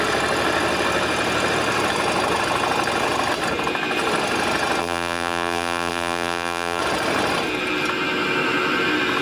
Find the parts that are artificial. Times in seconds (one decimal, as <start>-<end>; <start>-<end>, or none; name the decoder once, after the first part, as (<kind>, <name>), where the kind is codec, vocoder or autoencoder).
4.8-6.8 (vocoder, BigVGAN v2)